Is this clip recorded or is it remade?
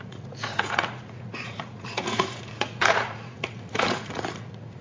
remade